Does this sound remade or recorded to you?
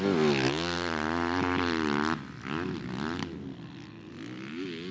recorded